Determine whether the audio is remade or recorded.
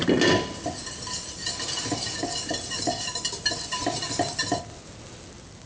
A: recorded